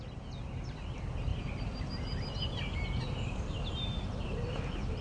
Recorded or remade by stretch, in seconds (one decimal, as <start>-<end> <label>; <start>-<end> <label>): 0.0-1.3 recorded; 1.3-4.2 remade; 4.2-5.0 recorded